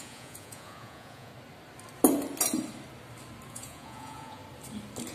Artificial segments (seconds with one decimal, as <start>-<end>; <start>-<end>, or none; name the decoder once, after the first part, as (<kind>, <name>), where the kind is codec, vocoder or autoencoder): 0.0-1.3 (vocoder, Vocos); 3.5-4.4